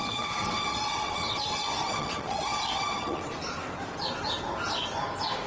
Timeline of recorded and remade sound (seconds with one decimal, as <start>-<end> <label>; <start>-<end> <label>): 0.0-3.3 remade; 3.3-5.5 recorded